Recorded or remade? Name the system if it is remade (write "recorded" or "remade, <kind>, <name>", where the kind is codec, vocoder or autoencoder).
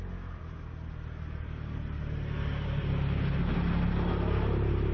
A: recorded